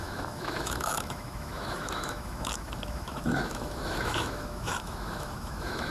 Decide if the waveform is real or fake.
fake